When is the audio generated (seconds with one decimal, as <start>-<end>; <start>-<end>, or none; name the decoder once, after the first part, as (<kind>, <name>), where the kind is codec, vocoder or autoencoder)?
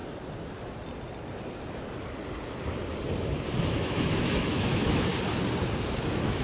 3.6-5.1 (autoencoder, DAC-VAE); 6.0-6.4